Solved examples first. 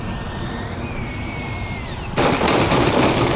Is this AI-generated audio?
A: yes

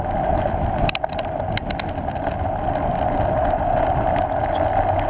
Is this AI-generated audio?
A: no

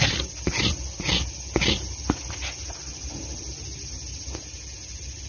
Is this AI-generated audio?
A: no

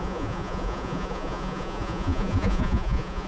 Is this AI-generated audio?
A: yes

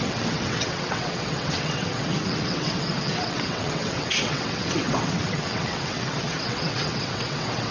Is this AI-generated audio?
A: yes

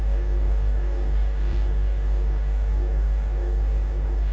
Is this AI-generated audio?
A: yes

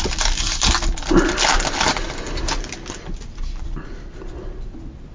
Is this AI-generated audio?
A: no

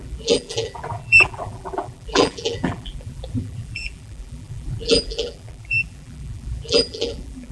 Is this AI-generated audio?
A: yes